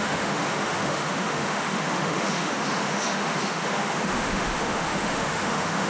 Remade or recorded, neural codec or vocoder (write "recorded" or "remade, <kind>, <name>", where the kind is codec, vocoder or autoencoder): remade, autoencoder, DAC-VAE